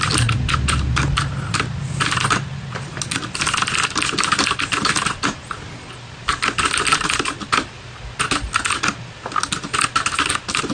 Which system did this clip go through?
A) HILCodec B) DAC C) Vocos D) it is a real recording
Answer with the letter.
D